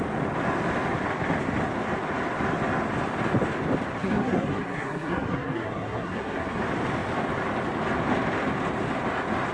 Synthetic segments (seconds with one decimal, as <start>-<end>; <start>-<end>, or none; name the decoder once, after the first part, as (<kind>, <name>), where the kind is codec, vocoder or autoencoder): 4.0-6.6 (codec, SNAC)